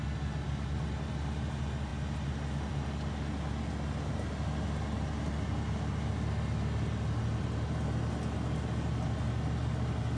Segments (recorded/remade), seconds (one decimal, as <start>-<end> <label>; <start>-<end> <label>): 0.0-10.2 recorded